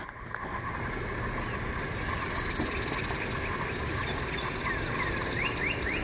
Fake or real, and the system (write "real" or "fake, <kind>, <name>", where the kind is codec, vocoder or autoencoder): real